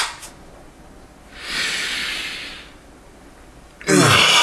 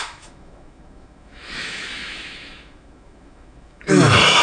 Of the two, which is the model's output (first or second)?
second